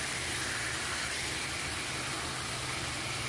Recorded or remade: recorded